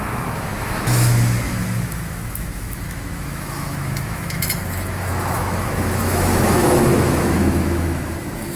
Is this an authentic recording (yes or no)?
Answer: no